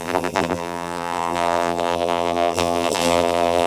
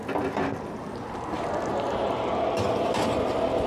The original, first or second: second